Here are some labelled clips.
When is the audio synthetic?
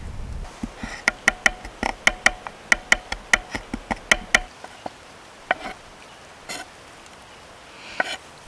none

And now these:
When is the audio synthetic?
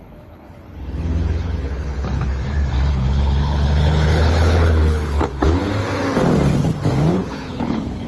0.0-2.3 (codec, HILCodec); 2.9-5.6; 7.1-8.1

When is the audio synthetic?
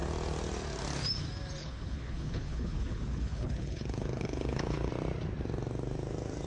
1.6-4.9 (codec, HILCodec)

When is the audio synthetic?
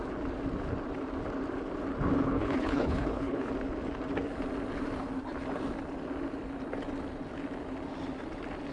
2.2-3.5 (codec, HILCodec)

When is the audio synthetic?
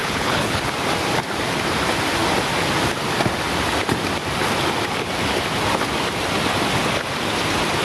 0.0-0.6 (codec, HILCodec)